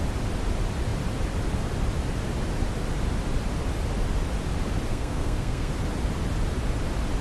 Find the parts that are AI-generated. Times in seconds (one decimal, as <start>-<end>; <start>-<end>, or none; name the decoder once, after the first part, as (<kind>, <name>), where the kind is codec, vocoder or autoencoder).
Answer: 4.9-5.7 (codec, SNAC)